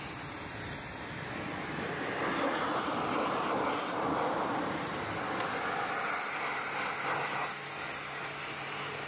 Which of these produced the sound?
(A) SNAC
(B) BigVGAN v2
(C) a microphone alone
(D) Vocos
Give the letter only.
C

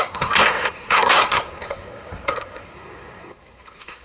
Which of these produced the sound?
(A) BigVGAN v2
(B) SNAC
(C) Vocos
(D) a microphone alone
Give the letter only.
B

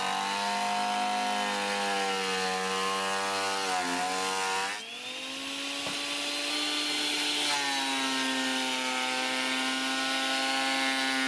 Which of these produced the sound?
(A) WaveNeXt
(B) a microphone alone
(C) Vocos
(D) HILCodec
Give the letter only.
B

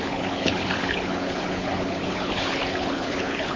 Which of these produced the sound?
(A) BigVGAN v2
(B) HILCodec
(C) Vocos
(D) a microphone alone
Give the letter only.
B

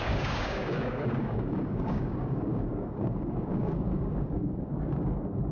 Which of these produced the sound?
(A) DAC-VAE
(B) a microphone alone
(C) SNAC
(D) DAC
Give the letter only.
D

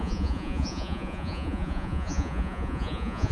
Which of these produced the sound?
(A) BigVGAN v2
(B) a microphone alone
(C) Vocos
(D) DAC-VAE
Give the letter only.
C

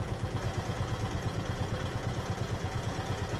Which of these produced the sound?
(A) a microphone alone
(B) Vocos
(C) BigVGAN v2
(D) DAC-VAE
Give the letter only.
B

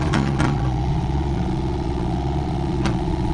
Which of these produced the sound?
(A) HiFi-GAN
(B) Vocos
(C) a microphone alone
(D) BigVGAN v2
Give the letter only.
B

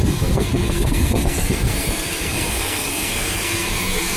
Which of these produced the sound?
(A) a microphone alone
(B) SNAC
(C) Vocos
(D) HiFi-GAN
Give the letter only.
B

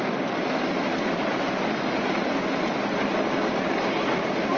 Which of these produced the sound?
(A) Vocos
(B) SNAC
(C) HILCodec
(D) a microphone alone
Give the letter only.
D